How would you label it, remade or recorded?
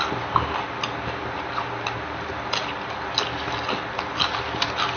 recorded